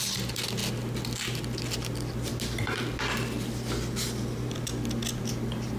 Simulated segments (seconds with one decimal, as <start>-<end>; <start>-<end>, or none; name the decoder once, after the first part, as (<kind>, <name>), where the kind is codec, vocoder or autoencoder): none